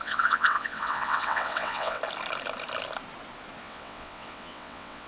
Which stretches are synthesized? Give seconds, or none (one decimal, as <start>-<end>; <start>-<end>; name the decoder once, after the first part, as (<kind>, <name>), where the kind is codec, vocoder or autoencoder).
0.0-2.0 (vocoder, WaveNeXt); 3.6-5.1